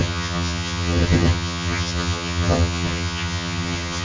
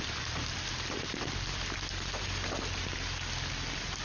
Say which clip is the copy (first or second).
first